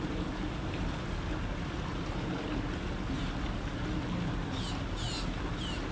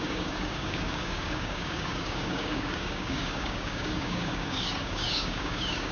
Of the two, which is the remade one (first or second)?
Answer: second